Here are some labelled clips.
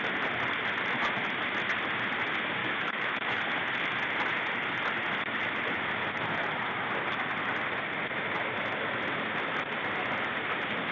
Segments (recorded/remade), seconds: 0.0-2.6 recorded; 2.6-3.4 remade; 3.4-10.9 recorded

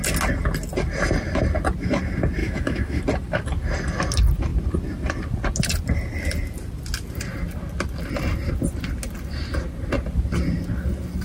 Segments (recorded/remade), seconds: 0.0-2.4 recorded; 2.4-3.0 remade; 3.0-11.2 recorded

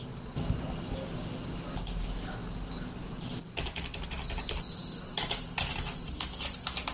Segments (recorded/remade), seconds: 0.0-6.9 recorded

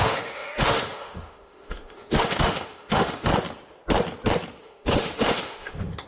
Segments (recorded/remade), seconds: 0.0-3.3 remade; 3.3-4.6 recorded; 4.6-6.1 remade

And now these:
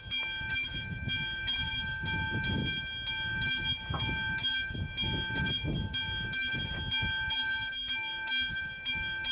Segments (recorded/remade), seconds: 0.0-2.6 remade; 2.6-3.1 recorded; 3.1-9.3 remade

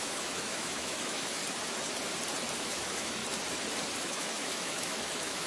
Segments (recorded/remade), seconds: 0.0-1.4 remade; 1.4-2.6 recorded; 2.6-3.2 remade; 3.2-4.0 recorded; 4.0-5.5 remade

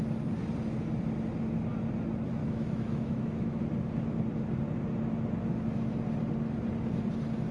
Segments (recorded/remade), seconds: 0.0-2.4 recorded; 2.4-3.6 remade; 3.6-7.5 recorded

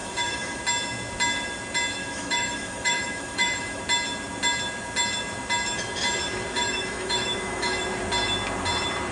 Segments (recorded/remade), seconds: 0.0-0.6 remade; 0.6-2.0 recorded; 2.0-3.8 remade; 3.8-6.6 recorded; 6.6-7.8 remade; 7.8-9.1 recorded